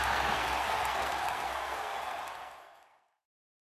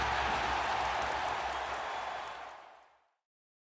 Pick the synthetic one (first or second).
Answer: first